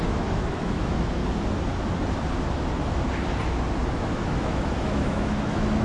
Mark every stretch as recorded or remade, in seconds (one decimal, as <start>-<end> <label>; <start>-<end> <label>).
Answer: 0.0-1.2 remade; 1.2-4.0 recorded; 4.0-5.8 remade